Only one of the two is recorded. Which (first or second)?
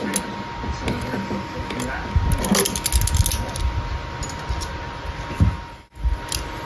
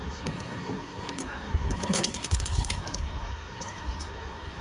first